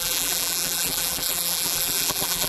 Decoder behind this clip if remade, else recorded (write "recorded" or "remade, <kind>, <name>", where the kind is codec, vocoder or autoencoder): remade, vocoder, BigVGAN v2